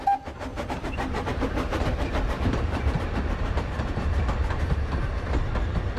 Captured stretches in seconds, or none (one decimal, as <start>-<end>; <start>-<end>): 0.0-0.5; 3.9-6.0